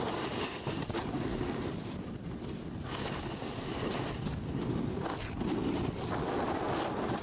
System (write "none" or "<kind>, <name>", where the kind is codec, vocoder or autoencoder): none